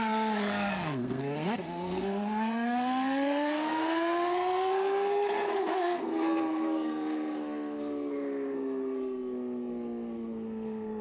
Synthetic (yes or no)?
yes